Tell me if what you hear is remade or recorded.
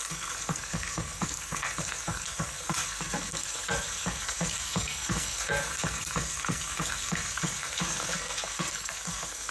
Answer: remade